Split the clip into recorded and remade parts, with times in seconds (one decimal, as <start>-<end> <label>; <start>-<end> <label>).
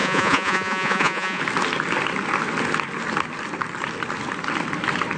0.0-1.4 remade; 1.4-5.2 recorded